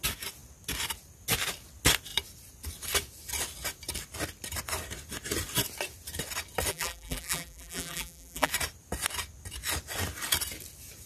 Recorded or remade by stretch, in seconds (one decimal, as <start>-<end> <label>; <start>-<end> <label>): 0.0-6.7 recorded; 6.7-8.5 remade; 8.5-11.1 recorded